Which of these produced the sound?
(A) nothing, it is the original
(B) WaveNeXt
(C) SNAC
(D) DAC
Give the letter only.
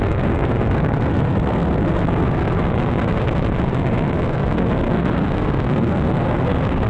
C